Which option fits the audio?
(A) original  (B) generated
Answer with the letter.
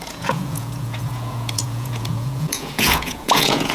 B